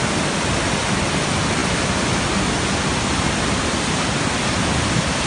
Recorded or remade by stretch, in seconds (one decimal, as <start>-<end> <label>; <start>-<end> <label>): 0.0-5.3 recorded